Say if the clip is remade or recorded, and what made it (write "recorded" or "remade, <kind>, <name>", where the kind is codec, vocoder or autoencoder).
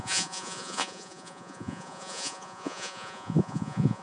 remade, vocoder, Vocos